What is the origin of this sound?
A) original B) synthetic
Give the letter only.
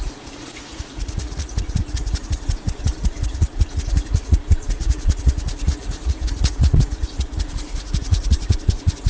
B